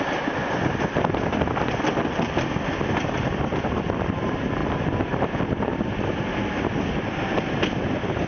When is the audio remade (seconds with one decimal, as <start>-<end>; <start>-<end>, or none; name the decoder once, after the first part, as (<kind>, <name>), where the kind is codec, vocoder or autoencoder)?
none